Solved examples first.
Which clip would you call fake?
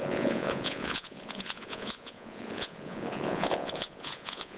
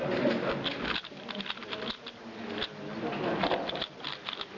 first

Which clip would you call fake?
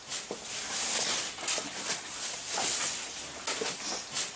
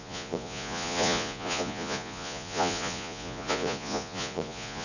second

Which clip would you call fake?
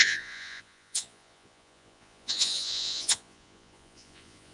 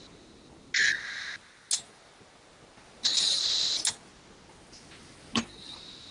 first